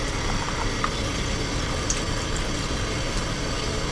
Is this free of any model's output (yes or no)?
yes